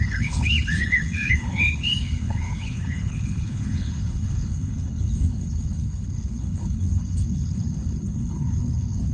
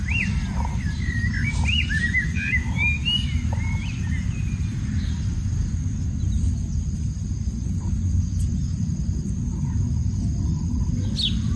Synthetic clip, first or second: first